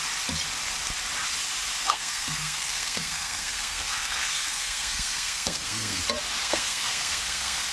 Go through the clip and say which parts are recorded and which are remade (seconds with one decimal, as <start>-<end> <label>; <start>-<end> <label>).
0.0-1.8 recorded; 1.8-6.0 remade; 6.0-6.4 recorded; 6.4-7.7 remade